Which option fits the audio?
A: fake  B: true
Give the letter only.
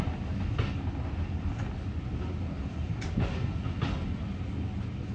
B